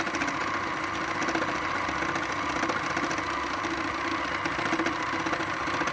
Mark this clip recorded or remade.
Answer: recorded